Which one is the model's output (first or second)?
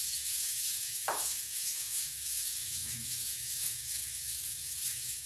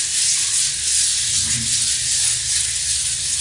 first